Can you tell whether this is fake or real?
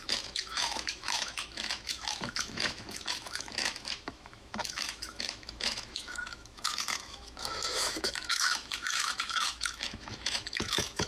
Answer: fake